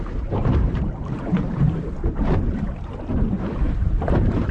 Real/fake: fake